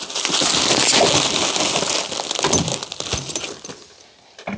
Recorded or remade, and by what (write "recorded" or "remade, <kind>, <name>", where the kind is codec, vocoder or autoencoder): recorded